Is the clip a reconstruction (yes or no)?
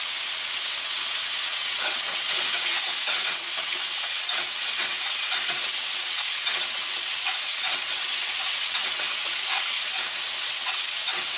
yes